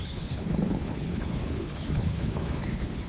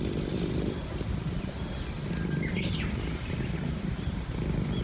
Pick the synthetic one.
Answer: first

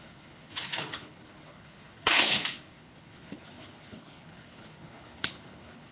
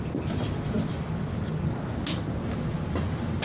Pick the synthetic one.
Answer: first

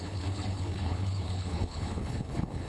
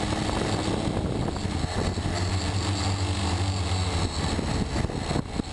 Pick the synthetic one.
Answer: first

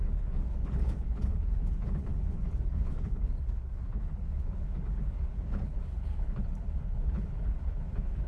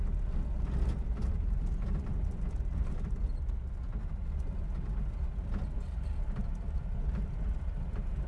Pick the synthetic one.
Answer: first